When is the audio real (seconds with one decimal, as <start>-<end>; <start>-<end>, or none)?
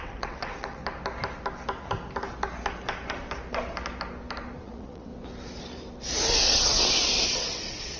0.8-4.6; 5.1-7.3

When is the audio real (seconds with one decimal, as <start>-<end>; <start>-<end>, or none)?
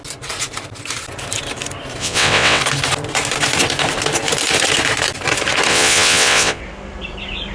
0.0-2.0; 2.6-5.7; 6.6-7.5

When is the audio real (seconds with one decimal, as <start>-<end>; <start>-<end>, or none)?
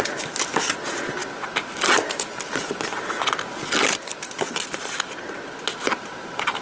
0.0-6.6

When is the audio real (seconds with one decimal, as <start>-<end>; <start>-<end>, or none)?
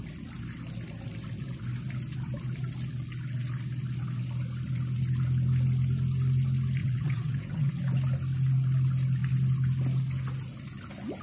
0.0-6.8; 7.7-11.2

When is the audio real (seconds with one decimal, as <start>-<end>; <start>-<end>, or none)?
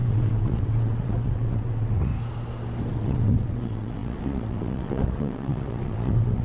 2.1-2.9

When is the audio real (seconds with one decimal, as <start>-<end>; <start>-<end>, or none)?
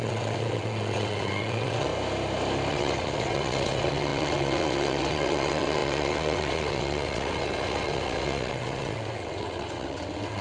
1.9-2.7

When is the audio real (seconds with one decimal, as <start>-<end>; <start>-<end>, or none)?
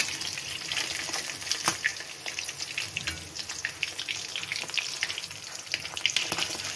0.0-6.8